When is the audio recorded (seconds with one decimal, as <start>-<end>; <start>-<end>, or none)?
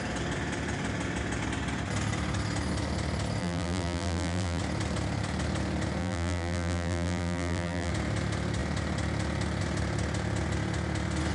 0.0-3.4; 4.6-6.0; 7.9-11.3